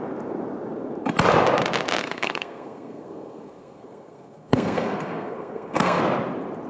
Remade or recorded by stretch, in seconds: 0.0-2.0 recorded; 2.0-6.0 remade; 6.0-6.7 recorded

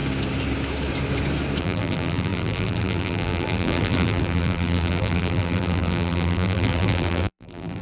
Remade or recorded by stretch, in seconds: 0.0-1.6 recorded; 1.6-7.8 remade

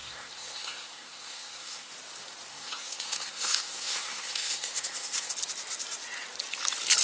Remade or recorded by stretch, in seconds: 0.0-1.9 remade; 1.9-2.5 recorded; 2.5-5.3 remade; 5.3-7.0 recorded

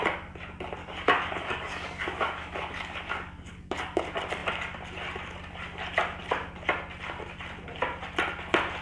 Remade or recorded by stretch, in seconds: 0.0-0.8 recorded; 0.8-4.0 remade; 4.0-8.8 recorded

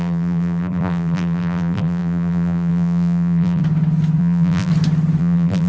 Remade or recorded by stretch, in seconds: 0.0-3.6 remade; 3.6-4.2 recorded; 4.2-4.7 remade; 4.7-5.2 recorded; 5.2-5.7 remade

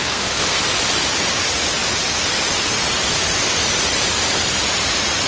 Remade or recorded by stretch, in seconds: 0.0-0.6 remade; 0.6-5.3 recorded